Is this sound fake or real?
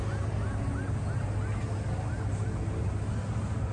real